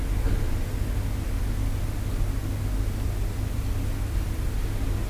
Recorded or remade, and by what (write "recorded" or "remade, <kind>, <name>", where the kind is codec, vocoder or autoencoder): recorded